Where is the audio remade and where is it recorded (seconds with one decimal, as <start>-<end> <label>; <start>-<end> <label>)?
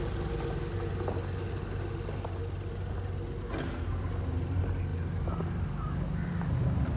0.0-7.0 recorded